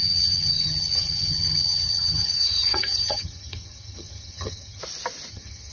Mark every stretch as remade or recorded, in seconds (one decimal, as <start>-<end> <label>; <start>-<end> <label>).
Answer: 0.0-4.8 remade; 4.8-5.3 recorded; 5.3-5.7 remade